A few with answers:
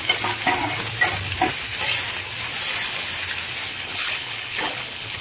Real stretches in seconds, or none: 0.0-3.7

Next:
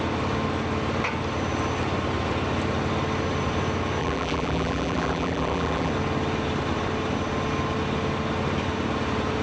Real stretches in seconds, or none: 0.0-4.0; 5.9-9.4

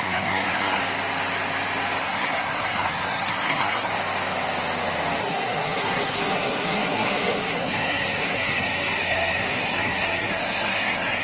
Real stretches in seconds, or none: 0.8-2.0; 3.9-5.2

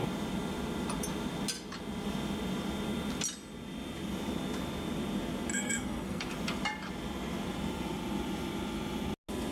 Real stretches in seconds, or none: 0.0-5.5; 6.3-9.5

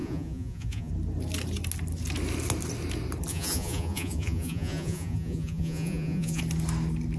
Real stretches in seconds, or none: 0.9-3.3; 6.4-7.2

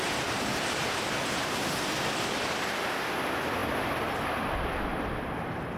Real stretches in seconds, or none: 0.0-5.8

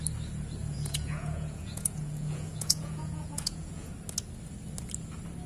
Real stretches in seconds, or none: 0.0-0.6; 3.9-5.5

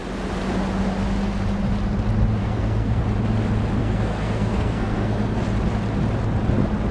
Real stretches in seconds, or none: 0.0-2.4; 3.0-3.8; 5.4-6.9